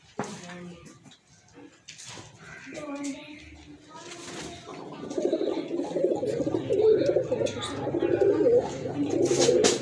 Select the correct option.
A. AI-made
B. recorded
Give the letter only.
B